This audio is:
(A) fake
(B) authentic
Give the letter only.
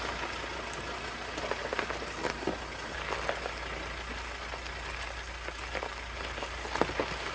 B